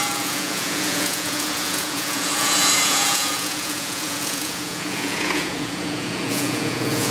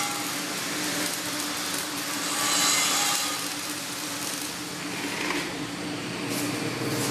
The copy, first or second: first